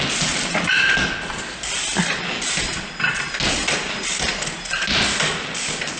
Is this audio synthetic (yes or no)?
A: no